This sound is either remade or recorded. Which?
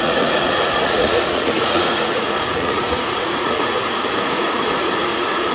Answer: remade